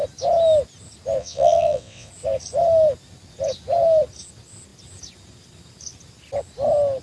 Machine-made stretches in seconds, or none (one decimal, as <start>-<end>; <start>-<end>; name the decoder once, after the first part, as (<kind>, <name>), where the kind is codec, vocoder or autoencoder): 1.2-2.1 (vocoder, WaveNeXt)